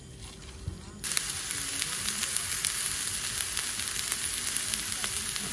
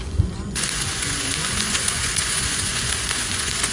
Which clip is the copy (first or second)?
second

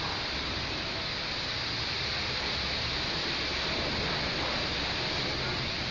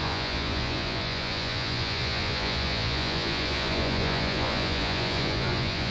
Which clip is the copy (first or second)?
second